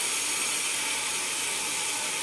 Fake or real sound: real